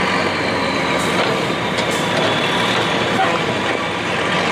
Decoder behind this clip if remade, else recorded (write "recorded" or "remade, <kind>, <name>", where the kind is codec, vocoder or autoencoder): recorded